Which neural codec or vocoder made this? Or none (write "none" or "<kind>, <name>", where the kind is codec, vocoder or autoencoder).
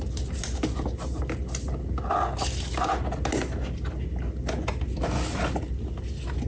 none